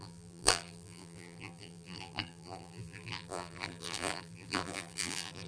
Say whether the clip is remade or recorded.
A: remade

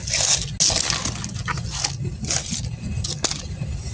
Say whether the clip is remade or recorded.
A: recorded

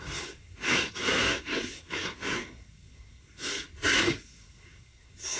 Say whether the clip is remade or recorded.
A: remade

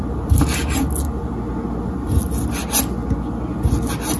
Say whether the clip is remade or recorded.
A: recorded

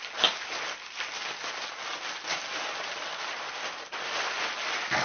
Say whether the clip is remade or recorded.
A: recorded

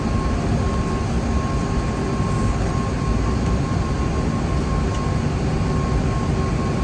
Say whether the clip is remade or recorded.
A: recorded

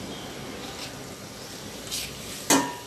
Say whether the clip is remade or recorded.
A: recorded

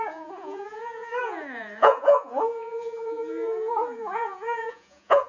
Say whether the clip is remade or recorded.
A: remade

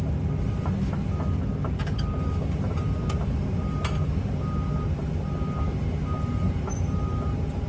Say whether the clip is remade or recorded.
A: recorded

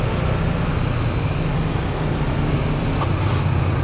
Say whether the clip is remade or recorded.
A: recorded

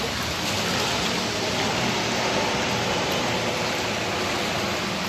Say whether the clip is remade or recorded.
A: recorded